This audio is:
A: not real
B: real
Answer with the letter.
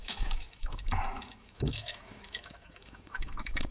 A